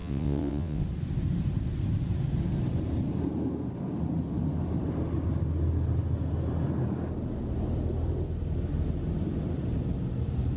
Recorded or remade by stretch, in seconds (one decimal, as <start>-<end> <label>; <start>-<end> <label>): 0.0-0.8 remade; 0.8-10.6 recorded